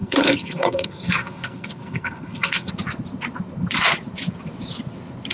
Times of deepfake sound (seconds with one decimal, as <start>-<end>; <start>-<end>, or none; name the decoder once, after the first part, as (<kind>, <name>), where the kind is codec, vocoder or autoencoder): 0.0-2.7 (codec, SNAC)